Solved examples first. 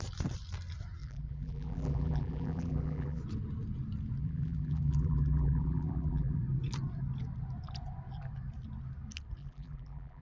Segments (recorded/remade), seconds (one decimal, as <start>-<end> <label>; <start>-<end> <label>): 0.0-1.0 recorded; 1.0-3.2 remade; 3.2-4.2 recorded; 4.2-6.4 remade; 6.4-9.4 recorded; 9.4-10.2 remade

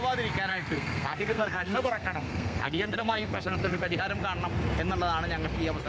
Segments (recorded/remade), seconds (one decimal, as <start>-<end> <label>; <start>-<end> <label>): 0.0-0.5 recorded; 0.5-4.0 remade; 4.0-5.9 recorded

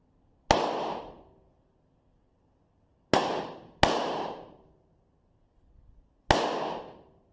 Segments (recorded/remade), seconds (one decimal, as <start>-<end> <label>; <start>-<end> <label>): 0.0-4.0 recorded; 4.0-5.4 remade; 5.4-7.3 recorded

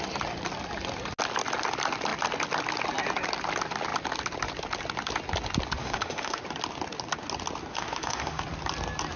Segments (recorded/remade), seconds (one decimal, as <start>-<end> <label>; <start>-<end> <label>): 0.0-5.8 recorded; 5.8-6.4 remade; 6.4-7.7 recorded; 7.7-8.4 remade; 8.4-9.2 recorded

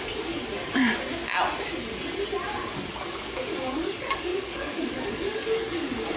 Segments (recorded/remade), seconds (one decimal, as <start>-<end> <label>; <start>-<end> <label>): 0.0-0.4 remade; 0.4-2.9 recorded; 2.9-6.2 remade

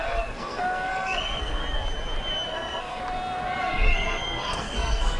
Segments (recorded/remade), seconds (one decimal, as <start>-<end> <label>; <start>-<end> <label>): 0.0-1.6 remade; 1.6-2.5 recorded; 2.5-3.0 remade; 3.0-3.6 recorded; 3.6-5.2 remade